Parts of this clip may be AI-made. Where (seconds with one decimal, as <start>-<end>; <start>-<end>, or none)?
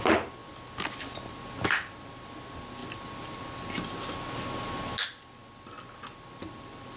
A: none